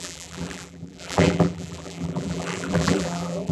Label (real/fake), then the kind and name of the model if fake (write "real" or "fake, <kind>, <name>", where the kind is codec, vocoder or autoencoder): fake, vocoder, BigVGAN v2